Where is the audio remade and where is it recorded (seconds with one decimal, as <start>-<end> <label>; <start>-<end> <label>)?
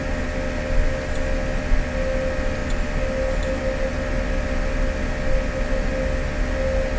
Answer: 0.0-7.0 recorded